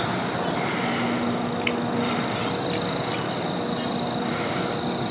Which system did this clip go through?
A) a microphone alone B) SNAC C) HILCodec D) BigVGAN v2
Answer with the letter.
A